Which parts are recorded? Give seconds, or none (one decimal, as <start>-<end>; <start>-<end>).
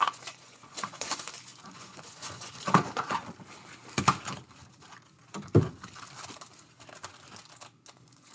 3.2-7.9